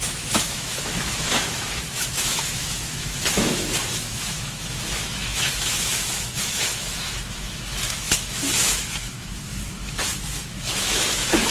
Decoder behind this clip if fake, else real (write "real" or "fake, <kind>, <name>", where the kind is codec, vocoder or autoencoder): fake, autoencoder, DAC-VAE